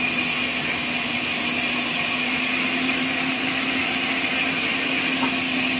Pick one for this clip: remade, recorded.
recorded